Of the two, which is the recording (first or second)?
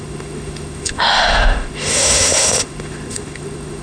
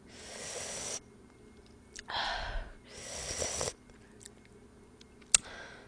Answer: second